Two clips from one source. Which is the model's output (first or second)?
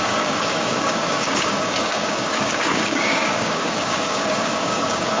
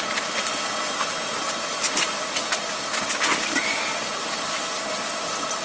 first